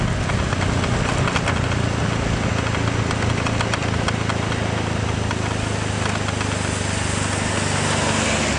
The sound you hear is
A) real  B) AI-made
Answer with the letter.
A